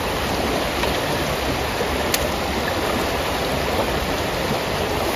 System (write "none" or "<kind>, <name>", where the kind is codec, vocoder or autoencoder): none